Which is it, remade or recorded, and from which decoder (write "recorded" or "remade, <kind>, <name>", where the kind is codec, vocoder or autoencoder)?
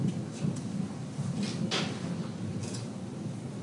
recorded